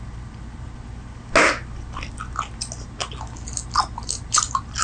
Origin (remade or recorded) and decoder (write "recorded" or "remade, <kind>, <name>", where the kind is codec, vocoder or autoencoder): recorded